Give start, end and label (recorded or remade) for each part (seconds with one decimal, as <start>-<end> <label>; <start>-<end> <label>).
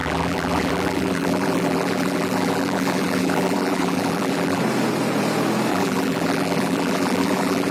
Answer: 0.0-4.6 remade; 4.6-5.7 recorded; 5.7-7.7 remade